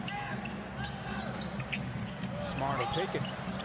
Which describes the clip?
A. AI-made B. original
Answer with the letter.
B